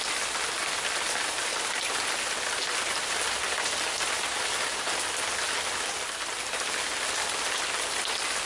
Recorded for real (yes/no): yes